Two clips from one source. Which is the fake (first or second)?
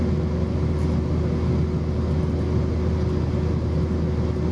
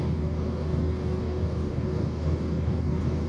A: second